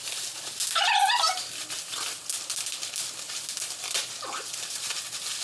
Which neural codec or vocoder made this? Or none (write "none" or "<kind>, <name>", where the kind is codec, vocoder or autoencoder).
none